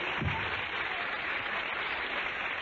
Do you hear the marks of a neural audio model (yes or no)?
no